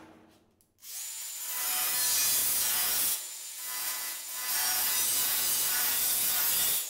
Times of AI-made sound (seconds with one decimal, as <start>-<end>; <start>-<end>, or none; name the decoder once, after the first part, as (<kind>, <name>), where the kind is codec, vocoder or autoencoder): 0.8-1.3 (vocoder, Vocos); 2.4-6.4